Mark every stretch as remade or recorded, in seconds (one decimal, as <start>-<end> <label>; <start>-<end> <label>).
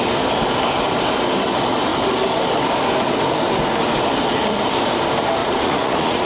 0.0-5.4 recorded; 5.4-6.3 remade